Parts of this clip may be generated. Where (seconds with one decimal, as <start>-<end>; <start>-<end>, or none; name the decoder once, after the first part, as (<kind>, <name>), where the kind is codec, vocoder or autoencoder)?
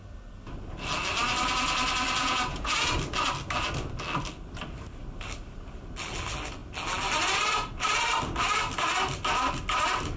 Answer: 2.2-2.9 (vocoder, Vocos)